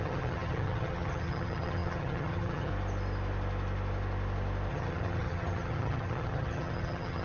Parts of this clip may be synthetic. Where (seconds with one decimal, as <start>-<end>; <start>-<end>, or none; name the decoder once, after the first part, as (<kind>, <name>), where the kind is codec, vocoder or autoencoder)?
0.0-2.7 (vocoder, HiFi-GAN); 4.7-7.2